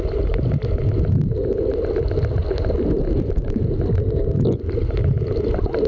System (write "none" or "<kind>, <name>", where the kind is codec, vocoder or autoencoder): none